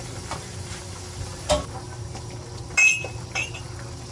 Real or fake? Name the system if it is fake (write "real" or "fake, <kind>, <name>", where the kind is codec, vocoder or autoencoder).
real